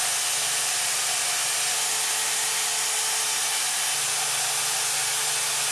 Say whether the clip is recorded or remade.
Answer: recorded